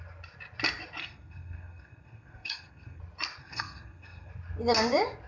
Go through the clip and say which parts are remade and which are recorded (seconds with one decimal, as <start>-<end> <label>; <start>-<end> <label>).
0.0-1.0 recorded; 1.0-3.0 remade; 3.0-3.4 recorded; 3.4-4.3 remade; 4.3-5.3 recorded

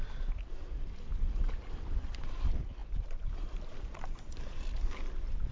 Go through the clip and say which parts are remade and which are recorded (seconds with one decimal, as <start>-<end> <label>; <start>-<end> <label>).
0.0-2.8 recorded; 2.8-4.5 remade; 4.5-5.5 recorded

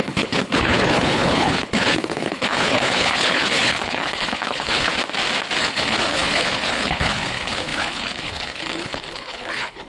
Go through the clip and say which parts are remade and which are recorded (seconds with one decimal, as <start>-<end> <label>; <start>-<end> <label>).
0.0-4.9 remade; 4.9-5.6 recorded; 5.6-9.9 remade

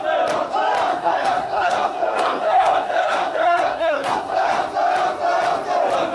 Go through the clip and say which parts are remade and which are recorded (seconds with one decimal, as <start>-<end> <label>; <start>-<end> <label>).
0.0-0.9 recorded; 0.9-4.6 remade; 4.6-6.1 recorded

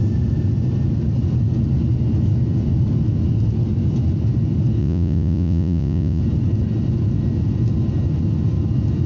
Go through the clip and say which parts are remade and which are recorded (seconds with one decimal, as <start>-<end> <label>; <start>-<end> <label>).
0.0-4.8 recorded; 4.8-6.2 remade; 6.2-9.1 recorded

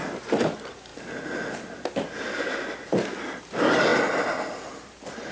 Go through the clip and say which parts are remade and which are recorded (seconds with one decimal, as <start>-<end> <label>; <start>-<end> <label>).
0.0-5.3 recorded